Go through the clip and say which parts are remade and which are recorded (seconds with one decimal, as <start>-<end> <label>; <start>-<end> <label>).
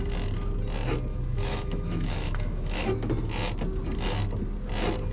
0.0-1.1 recorded; 1.1-2.8 remade; 2.8-5.1 recorded